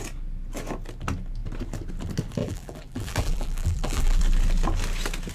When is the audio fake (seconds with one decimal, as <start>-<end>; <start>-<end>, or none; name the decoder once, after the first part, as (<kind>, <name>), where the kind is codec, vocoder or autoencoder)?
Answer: 2.4-4.2 (vocoder, BigVGAN v2)